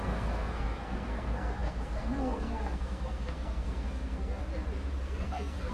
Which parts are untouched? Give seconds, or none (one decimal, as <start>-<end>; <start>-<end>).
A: 4.4-5.0